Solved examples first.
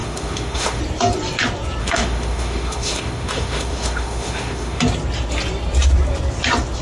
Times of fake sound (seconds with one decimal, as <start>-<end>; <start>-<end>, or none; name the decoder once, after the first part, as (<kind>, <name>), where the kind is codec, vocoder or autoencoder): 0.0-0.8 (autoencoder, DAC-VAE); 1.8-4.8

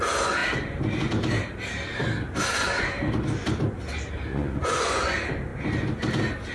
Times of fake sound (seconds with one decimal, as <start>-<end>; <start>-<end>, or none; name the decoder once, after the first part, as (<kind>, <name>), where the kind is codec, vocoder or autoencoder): 4.3-5.1 (vocoder, Vocos)

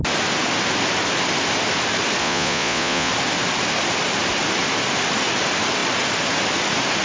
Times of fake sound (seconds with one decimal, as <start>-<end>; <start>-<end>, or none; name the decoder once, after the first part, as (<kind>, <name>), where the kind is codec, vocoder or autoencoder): 2.2-3.1 (vocoder, Vocos)

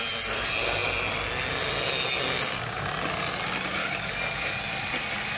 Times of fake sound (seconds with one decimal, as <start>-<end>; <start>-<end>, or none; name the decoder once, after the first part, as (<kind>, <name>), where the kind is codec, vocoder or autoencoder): 3.8-4.6 (codec, DAC)

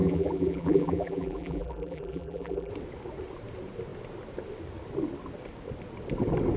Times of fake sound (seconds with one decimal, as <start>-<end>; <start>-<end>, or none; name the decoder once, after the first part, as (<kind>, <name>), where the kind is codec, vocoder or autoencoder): 0.0-2.7 (vocoder, BigVGAN v2)